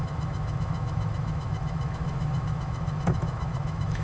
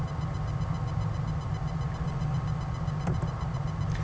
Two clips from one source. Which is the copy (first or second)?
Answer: first